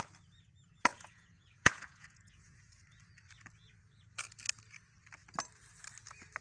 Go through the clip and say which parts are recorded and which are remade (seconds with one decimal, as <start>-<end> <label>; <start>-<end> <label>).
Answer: 0.0-0.9 recorded; 0.9-2.6 remade; 2.6-6.4 recorded